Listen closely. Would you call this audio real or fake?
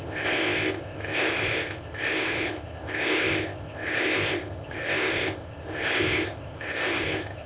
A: fake